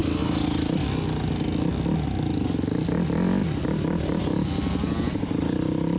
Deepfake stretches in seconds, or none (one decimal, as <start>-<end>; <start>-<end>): none